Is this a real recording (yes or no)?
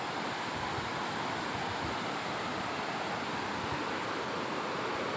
yes